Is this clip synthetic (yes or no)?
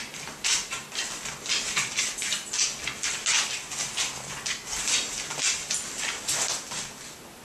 no